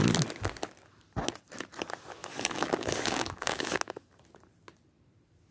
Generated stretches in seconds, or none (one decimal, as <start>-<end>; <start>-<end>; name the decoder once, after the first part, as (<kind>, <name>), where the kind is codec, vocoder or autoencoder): 2.2-3.8 (codec, DAC)